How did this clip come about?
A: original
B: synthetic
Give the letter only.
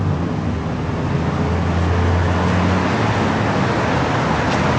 A